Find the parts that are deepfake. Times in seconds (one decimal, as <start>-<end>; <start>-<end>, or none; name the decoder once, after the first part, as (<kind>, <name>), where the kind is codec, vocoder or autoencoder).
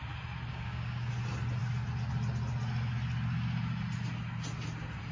0.5-1.1 (codec, DAC)